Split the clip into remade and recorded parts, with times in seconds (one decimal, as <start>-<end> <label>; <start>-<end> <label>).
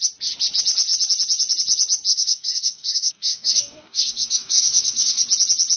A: 0.0-2.1 recorded; 2.1-5.2 remade; 5.2-5.8 recorded